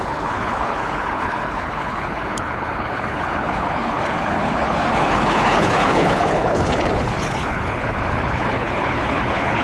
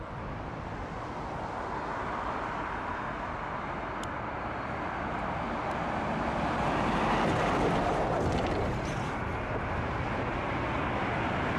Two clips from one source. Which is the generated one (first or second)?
first